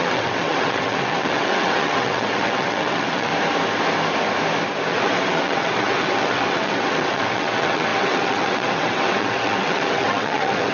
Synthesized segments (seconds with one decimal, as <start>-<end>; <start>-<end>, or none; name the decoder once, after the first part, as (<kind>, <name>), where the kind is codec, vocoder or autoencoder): 0.0-3.3 (vocoder, WaveNeXt); 4.9-10.7